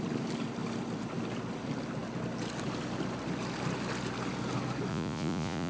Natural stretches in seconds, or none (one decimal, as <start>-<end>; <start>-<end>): 0.0-4.9